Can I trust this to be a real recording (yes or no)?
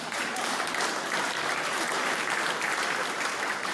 no